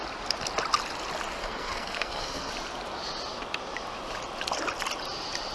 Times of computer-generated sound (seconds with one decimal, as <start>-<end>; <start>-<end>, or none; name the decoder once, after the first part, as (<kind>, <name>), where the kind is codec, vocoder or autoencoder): 1.4-2.5 (codec, SNAC)